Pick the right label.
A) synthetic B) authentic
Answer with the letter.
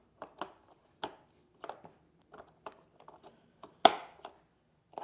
B